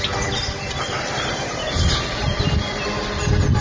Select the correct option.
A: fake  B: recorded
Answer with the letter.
B